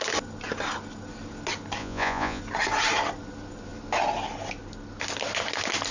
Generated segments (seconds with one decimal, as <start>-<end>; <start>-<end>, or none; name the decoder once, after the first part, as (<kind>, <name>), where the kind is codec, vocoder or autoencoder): 1.8-2.4 (vocoder, Vocos)